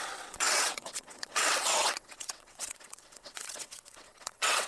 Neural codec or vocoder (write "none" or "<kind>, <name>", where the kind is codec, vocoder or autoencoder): vocoder, WaveNeXt